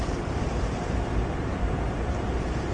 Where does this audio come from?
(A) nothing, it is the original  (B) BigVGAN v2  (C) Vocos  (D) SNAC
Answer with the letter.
B